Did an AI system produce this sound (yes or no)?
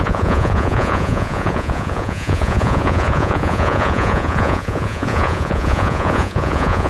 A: yes